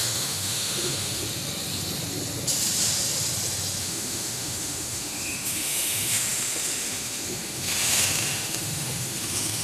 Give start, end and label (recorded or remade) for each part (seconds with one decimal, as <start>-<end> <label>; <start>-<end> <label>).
0.0-1.2 remade; 1.2-3.8 recorded; 3.8-9.6 remade

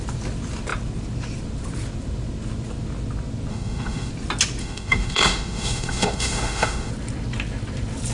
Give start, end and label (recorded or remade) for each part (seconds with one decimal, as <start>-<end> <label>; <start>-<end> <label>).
0.0-3.5 recorded; 3.5-4.1 remade; 4.1-4.6 recorded; 4.6-6.9 remade; 6.9-8.1 recorded

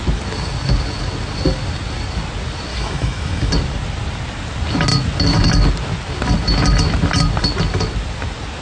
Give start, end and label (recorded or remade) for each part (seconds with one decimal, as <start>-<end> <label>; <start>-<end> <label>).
0.0-2.7 recorded; 2.7-3.5 remade; 3.5-8.6 recorded

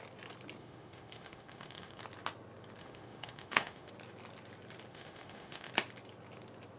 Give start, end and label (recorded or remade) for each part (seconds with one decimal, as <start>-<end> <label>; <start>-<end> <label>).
0.0-0.6 recorded; 0.6-2.0 remade; 2.0-2.8 recorded; 2.8-3.9 remade; 3.9-4.9 recorded; 4.9-5.7 remade; 5.7-6.8 recorded